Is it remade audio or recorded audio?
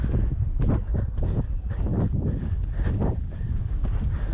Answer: recorded